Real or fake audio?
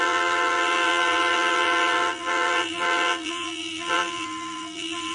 fake